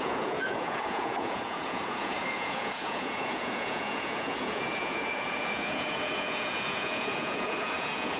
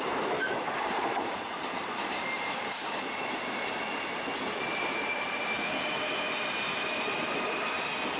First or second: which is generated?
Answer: first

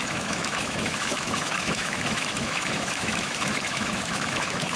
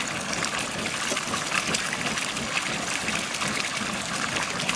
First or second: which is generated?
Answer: first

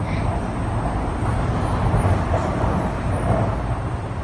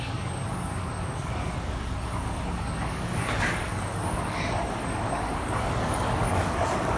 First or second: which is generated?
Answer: second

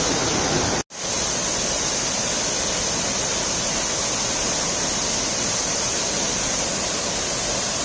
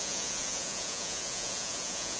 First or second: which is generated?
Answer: second